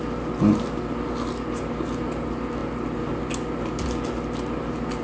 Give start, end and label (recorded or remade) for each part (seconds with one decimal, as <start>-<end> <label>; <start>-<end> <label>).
0.0-5.0 recorded